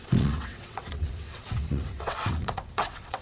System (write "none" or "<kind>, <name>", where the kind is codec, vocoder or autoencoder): vocoder, WaveNeXt